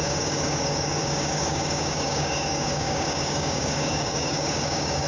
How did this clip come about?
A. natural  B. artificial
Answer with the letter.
B